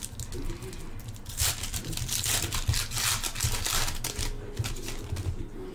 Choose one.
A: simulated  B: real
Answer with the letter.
B